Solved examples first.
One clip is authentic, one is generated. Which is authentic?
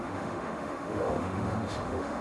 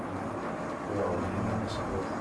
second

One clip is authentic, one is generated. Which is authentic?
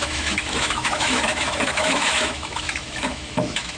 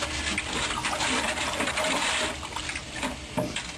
second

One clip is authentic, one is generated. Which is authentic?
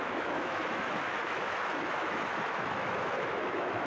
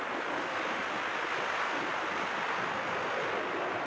second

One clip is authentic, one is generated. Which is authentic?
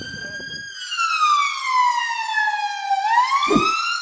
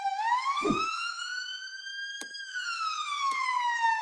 first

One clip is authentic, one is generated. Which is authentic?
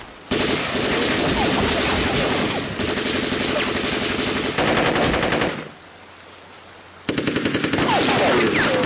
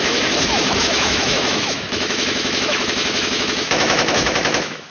first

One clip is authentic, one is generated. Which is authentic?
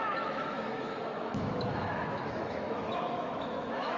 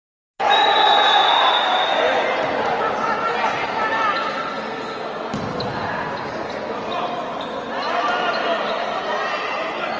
second